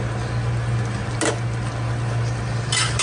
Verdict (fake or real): real